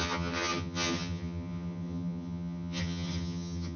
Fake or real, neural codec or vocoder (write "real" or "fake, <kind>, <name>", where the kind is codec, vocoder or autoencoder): fake, vocoder, HiFi-GAN